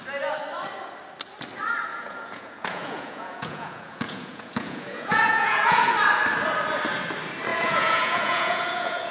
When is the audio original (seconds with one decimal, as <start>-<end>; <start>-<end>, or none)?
0.0-1.9; 5.9-7.5